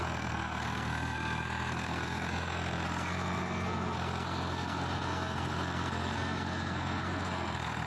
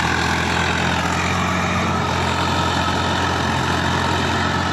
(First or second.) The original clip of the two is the second